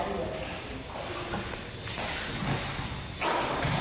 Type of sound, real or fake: real